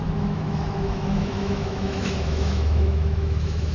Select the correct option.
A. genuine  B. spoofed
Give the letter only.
B